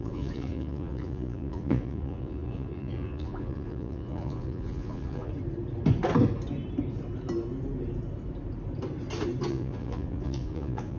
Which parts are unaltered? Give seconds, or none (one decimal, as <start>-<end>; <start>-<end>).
5.3-9.5